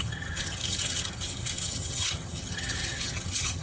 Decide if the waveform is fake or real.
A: fake